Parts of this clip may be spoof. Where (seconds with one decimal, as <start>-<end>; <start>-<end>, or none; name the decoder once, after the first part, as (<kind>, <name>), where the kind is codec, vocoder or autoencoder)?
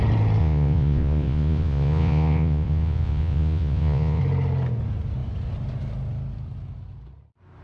0.4-4.2 (vocoder, Vocos)